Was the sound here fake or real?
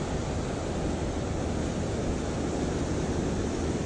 real